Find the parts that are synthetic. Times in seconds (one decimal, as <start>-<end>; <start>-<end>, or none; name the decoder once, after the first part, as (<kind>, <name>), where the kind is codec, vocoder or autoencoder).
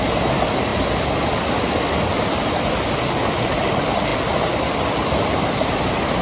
none